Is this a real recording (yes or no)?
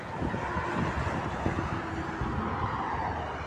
yes